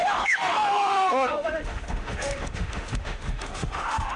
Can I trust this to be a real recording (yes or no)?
no